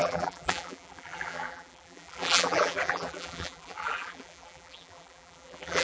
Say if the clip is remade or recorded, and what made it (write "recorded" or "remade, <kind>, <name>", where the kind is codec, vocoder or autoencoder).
remade, vocoder, BigVGAN v2